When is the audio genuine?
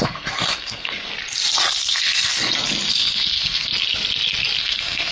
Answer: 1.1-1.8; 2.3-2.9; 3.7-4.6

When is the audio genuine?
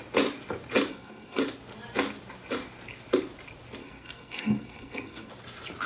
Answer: 0.0-0.9; 1.4-3.8; 5.3-5.9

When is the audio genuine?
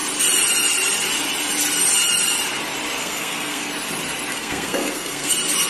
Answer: 0.0-3.0; 3.7-4.3; 5.3-5.7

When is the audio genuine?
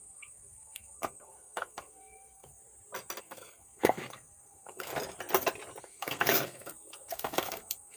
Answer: 2.6-3.2; 4.9-5.8